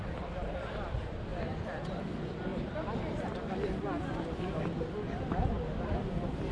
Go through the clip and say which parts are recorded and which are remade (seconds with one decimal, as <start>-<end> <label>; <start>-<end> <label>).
0.0-6.5 recorded